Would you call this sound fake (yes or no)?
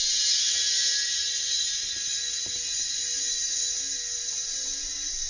no